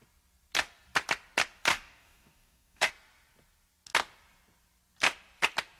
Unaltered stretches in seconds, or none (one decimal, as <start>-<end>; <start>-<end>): 0.0-1.7; 2.9-5.8

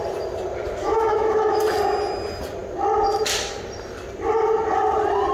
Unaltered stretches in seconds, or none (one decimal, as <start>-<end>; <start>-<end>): 0.0-0.8; 1.6-5.3